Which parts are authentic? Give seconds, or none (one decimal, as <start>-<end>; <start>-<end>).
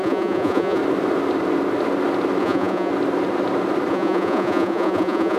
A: 0.8-2.4; 2.9-3.9